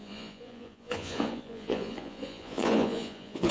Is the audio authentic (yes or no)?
no